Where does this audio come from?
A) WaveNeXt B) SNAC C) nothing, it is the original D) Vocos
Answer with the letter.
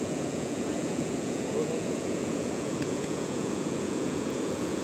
D